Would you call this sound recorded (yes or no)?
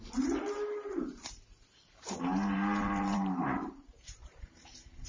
no